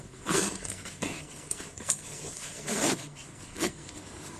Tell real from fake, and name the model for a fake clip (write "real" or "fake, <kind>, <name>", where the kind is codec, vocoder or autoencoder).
fake, codec, SNAC